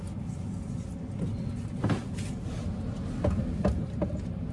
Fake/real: real